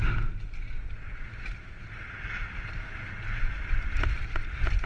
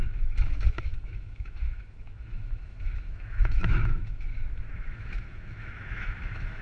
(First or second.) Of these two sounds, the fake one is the second